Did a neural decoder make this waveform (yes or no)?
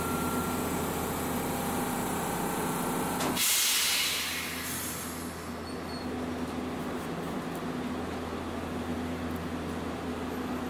no